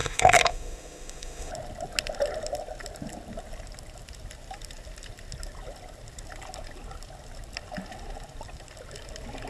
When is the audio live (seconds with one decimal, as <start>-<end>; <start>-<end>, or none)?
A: 1.5-9.5